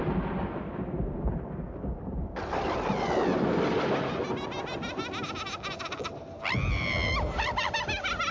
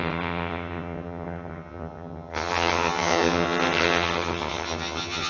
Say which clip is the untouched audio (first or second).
first